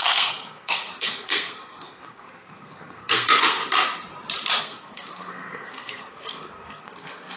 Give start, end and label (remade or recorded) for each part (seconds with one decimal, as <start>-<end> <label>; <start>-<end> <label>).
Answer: 0.0-3.6 remade; 3.6-4.6 recorded; 4.6-7.4 remade